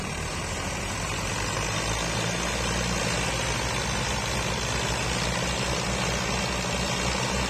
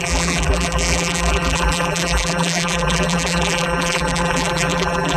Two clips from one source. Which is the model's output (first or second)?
second